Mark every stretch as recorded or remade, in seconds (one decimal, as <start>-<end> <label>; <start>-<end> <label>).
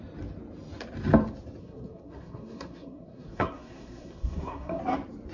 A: 0.0-1.6 recorded; 1.6-4.8 remade; 4.8-5.3 recorded